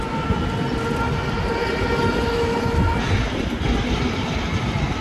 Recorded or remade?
recorded